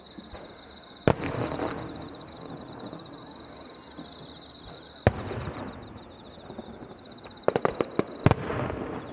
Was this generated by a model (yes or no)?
no